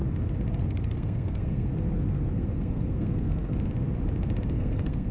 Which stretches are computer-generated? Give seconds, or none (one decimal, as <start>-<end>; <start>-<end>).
0.6-1.7; 2.3-3.5; 4.5-5.1

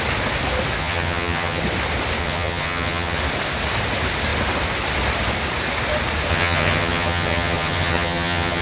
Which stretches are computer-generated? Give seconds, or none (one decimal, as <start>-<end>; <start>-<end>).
0.8-1.6; 2.2-3.2; 6.3-8.6

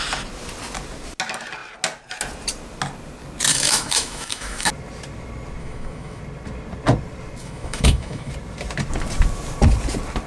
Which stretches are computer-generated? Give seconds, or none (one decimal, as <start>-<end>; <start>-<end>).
3.5-4.7; 5.6-6.2; 7.4-8.3

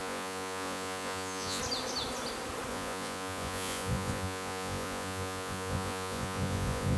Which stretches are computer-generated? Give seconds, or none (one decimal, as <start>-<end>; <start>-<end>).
0.0-1.6; 2.7-7.0

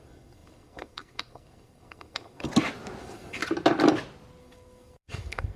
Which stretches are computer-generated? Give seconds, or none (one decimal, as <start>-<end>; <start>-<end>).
0.0-2.5; 3.0-3.4; 4.4-5.6

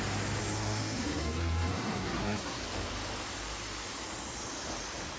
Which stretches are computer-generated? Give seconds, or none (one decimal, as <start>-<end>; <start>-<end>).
0.4-2.6

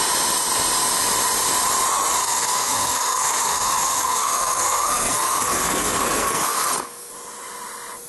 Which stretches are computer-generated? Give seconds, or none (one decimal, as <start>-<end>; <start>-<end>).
2.2-7.1